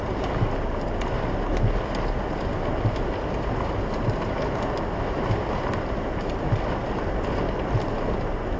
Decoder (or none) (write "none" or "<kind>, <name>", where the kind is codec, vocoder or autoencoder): none